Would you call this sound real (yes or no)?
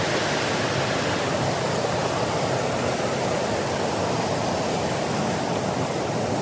yes